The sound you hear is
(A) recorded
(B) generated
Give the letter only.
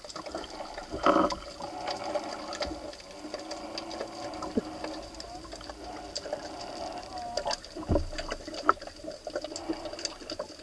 A